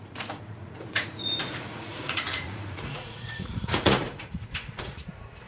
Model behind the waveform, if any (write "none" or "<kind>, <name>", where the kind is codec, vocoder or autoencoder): vocoder, Vocos